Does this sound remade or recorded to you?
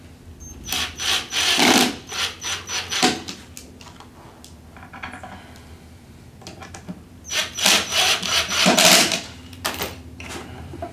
recorded